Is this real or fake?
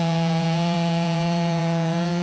fake